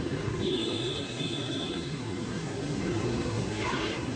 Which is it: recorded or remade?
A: remade